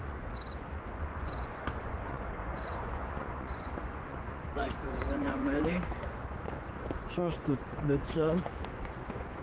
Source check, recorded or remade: remade